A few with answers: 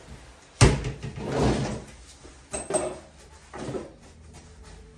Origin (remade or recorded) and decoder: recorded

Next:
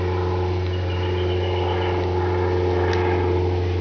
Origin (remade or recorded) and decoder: recorded